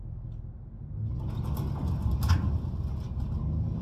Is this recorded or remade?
recorded